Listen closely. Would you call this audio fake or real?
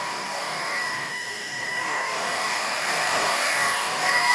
fake